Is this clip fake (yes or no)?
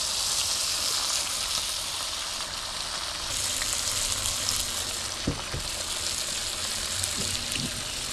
no